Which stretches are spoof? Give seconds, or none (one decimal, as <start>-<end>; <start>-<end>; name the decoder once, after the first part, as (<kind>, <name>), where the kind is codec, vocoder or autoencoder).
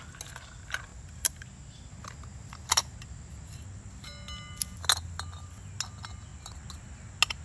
none